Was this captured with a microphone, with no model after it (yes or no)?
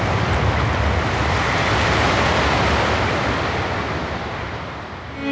yes